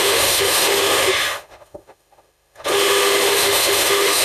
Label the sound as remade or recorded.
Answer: remade